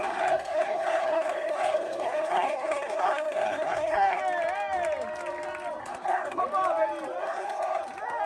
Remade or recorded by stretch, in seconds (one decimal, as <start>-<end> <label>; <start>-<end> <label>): 0.0-4.2 remade; 4.2-5.8 recorded; 5.8-6.4 remade; 6.4-7.2 recorded; 7.2-7.8 remade; 7.8-8.3 recorded